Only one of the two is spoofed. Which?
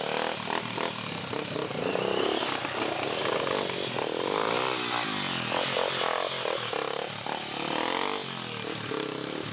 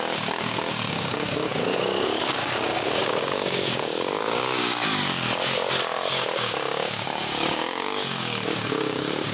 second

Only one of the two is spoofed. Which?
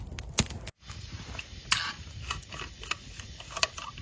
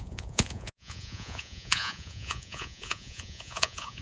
second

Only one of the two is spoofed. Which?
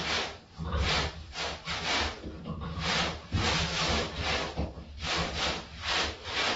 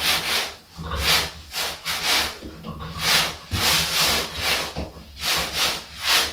first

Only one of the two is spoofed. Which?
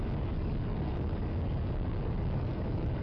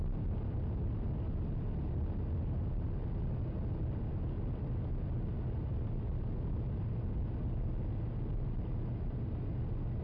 first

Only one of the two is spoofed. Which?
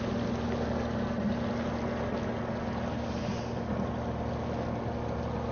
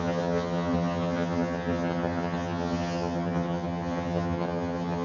second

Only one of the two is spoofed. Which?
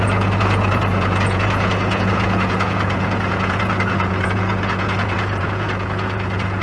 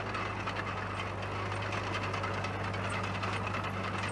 first